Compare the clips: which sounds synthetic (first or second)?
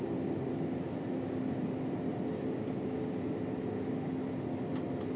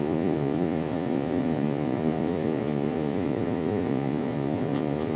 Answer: second